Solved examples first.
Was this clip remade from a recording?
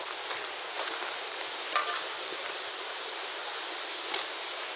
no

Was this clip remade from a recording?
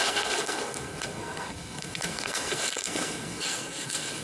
yes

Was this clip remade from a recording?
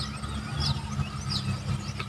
no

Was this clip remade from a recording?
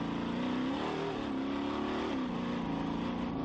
no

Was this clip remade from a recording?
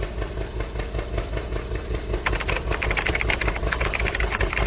yes